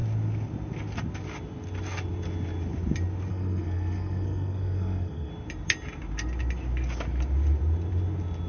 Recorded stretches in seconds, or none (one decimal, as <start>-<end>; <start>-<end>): 0.0-3.3; 5.3-8.5